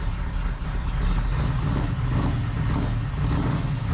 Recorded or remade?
recorded